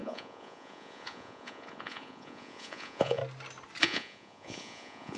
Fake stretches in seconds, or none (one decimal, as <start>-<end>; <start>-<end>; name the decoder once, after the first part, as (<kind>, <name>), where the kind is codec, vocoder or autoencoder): 0.0-3.2 (vocoder, Vocos); 3.8-5.2